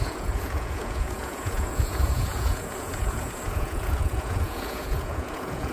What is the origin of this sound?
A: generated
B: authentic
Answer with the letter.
A